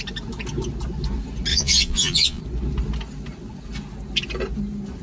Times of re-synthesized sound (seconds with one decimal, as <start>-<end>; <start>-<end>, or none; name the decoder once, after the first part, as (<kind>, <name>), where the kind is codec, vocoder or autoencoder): 1.5-2.4 (vocoder, Vocos)